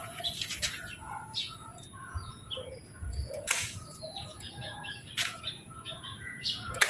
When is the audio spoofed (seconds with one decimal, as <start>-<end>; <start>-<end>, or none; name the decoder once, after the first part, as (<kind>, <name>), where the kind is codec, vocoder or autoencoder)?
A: 0.0-6.9 (vocoder, Vocos)